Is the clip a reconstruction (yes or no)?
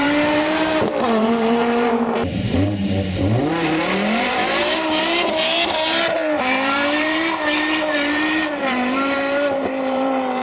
yes